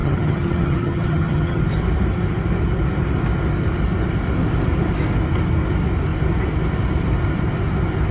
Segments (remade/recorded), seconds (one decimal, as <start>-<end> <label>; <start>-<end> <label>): 0.0-1.6 remade; 1.6-8.1 recorded